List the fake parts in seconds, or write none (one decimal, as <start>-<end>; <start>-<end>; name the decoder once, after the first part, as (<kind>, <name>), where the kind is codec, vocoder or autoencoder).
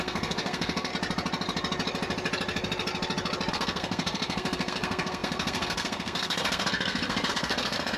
0.0-0.9 (codec, SNAC); 3.5-8.0